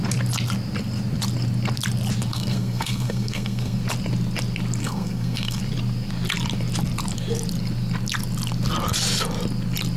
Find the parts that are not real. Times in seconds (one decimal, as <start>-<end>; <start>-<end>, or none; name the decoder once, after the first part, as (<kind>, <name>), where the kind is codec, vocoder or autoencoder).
2.3-3.8 (codec, SNAC); 4.8-5.6